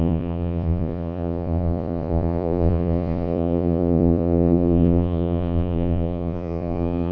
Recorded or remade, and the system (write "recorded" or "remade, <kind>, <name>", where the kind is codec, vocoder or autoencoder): remade, vocoder, Vocos